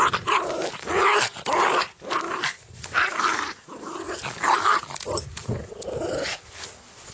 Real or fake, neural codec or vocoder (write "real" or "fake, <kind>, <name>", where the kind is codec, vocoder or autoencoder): real